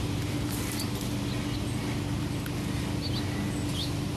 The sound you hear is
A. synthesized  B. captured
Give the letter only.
B